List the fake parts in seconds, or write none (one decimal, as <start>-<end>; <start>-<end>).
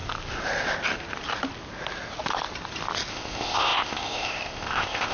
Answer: 3.1-5.1